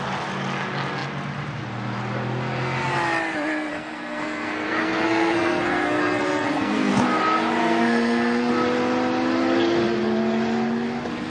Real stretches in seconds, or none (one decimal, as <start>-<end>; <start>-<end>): 0.0-3.7; 6.9-7.6; 8.5-11.3